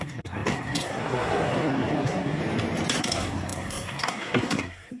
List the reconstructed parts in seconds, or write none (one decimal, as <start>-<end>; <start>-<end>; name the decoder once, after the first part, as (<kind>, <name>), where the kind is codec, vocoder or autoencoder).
0.0-2.4 (codec, SNAC); 3.0-5.0